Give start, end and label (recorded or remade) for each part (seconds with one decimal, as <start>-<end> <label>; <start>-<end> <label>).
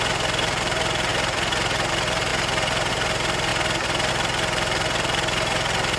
0.0-1.1 remade; 1.1-1.9 recorded; 1.9-2.3 remade; 2.3-2.9 recorded; 2.9-3.5 remade; 3.5-4.1 recorded; 4.1-6.0 remade